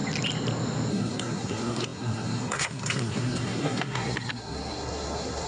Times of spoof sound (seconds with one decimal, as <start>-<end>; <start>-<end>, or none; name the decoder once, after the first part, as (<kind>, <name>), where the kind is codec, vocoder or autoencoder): 0.9-5.5 (codec, SNAC)